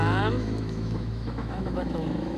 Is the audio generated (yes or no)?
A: yes